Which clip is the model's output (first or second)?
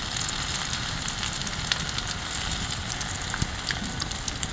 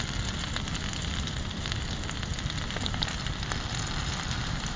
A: second